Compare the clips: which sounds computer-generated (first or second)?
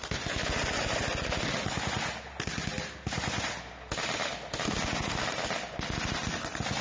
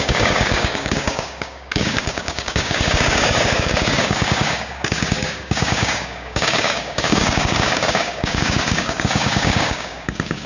second